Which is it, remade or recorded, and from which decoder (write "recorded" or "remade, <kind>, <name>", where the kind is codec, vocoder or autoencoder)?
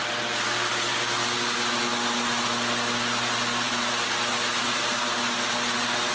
recorded